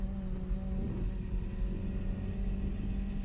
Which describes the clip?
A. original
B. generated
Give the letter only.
A